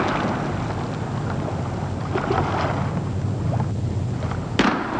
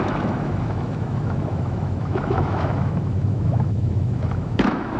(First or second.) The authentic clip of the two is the first